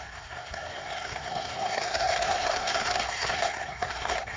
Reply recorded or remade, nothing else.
remade